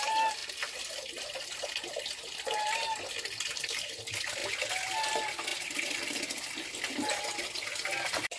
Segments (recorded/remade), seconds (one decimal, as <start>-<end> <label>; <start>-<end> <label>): 0.0-8.4 recorded